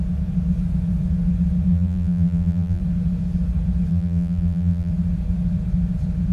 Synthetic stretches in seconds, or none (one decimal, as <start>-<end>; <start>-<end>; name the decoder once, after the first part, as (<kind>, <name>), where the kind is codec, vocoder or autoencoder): 1.7-2.8 (vocoder, BigVGAN v2); 3.9-4.9